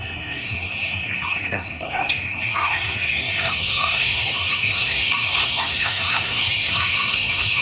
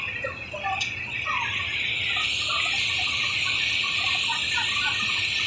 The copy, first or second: first